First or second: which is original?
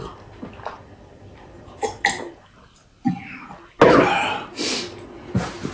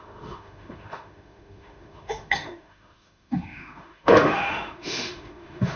first